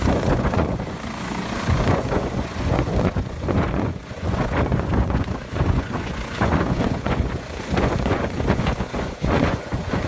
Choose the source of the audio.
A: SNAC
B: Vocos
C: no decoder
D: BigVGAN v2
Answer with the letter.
B